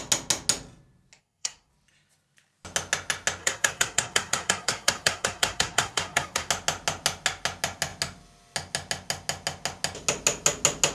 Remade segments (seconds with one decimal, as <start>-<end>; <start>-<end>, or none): 1.2-1.7; 3.4-6.5